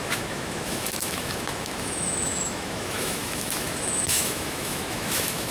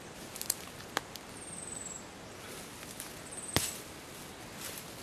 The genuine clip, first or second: second